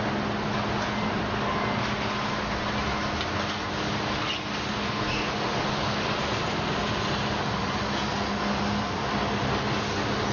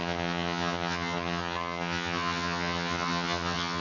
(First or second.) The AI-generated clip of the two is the second